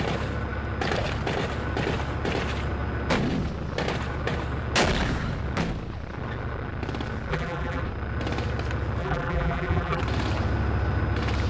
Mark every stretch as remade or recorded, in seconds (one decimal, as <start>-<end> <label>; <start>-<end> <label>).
0.0-7.3 recorded; 7.3-7.8 remade; 7.8-9.0 recorded; 9.0-10.0 remade; 10.0-11.5 recorded